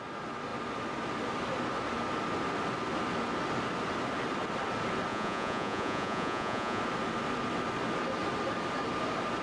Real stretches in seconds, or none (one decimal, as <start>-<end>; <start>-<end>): 0.0-5.1; 6.8-9.4